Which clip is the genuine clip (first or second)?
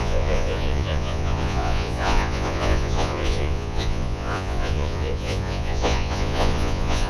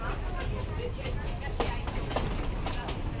second